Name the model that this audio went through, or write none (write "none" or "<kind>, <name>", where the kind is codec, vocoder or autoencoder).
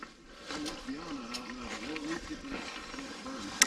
none